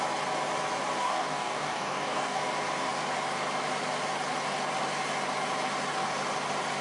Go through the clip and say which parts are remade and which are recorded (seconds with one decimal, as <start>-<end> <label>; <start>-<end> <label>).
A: 0.0-1.0 recorded; 1.0-2.4 remade; 2.4-6.8 recorded

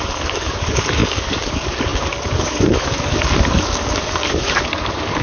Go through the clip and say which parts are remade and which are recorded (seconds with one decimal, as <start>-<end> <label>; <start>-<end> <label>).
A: 0.0-5.2 remade